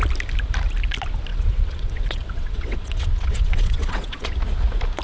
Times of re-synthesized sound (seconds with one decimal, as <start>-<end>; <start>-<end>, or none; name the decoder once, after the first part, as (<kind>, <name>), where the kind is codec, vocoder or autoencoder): 1.3-4.3 (vocoder, WaveNeXt)